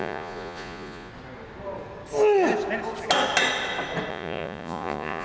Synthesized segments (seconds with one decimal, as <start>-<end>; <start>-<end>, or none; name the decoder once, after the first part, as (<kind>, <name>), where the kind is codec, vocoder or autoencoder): 0.0-1.1 (vocoder, Vocos); 4.1-5.2